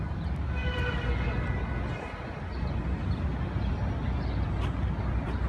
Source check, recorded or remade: recorded